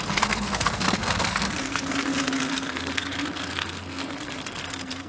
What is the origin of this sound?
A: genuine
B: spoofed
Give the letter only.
B